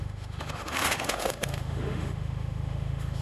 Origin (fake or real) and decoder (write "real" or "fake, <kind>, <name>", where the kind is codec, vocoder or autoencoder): fake, autoencoder, DAC-VAE